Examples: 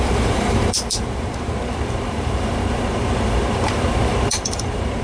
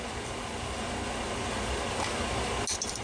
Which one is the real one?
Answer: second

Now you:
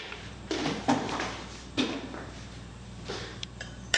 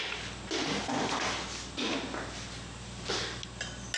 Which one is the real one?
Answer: second